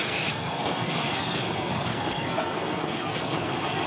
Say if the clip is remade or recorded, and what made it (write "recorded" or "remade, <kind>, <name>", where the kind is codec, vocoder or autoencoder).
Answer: remade, codec, SNAC